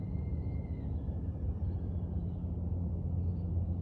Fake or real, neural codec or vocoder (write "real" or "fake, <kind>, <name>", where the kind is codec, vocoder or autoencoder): real